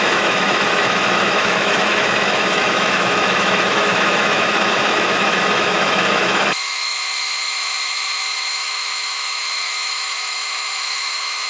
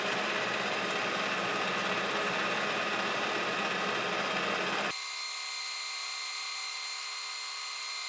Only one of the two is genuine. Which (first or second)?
second